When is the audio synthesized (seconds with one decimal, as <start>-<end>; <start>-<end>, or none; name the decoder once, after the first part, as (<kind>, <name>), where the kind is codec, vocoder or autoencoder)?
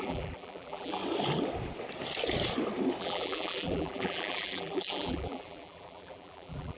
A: 0.0-1.0 (vocoder, BigVGAN v2); 3.0-6.8